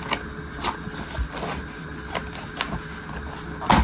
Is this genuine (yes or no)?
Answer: yes